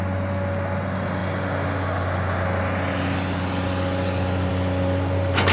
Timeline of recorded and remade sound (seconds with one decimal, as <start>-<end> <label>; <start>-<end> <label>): 0.0-5.5 recorded